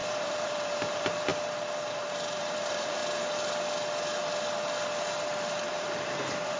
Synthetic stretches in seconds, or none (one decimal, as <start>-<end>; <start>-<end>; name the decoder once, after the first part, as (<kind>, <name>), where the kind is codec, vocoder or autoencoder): 0.0-1.3 (vocoder, BigVGAN v2); 1.9-3.0; 5.7-6.6